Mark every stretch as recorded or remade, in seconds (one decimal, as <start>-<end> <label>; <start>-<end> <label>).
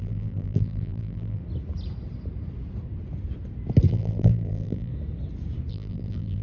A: 0.0-1.4 remade; 1.4-3.9 recorded; 3.9-4.9 remade; 4.9-5.7 recorded; 5.7-6.4 remade